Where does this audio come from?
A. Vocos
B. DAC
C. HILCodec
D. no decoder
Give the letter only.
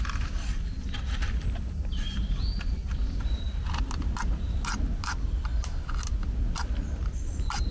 D